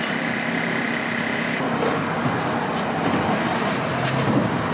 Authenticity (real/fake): real